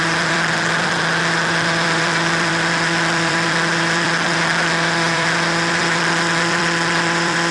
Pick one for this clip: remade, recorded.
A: remade